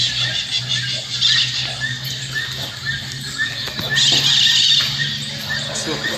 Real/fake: real